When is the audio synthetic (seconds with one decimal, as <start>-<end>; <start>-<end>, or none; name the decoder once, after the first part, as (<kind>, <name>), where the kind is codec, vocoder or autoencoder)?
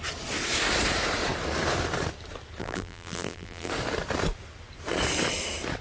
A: 2.6-3.7 (vocoder, BigVGAN v2)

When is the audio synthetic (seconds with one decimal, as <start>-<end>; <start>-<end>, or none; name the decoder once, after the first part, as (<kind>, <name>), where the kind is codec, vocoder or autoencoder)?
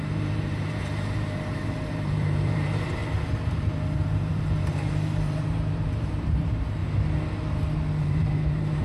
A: 0.0-3.0 (vocoder, BigVGAN v2); 3.5-6.8; 8.0-8.8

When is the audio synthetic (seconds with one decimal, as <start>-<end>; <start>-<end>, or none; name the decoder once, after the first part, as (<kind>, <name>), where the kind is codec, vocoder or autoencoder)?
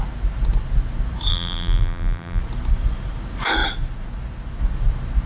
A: 1.3-2.4 (vocoder, BigVGAN v2)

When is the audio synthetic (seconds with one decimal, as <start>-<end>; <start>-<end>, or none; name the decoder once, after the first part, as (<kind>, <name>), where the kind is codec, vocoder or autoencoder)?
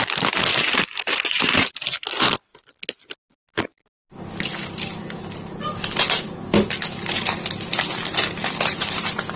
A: 0.5-1.7 (vocoder, BigVGAN v2)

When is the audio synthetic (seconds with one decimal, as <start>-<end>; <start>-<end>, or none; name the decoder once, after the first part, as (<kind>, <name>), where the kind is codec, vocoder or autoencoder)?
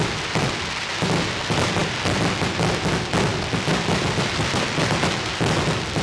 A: none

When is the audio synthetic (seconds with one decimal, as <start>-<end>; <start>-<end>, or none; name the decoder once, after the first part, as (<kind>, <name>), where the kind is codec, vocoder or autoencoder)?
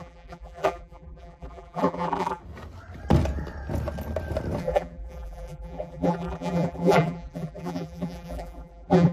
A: 0.0-2.4 (vocoder, BigVGAN v2); 4.6-9.1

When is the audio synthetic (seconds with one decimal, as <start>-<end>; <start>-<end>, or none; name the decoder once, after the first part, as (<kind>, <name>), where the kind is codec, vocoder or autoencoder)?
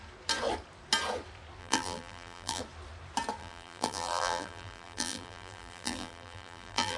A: 1.6-2.6 (vocoder, BigVGAN v2); 3.4-7.0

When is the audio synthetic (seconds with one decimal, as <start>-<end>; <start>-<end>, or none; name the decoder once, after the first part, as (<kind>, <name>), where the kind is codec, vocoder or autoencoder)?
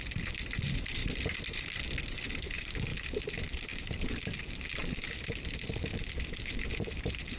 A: 0.0-2.9 (vocoder, BigVGAN v2); 5.1-7.4